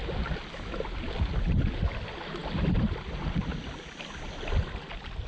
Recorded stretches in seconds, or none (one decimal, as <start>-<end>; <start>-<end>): 0.0-5.3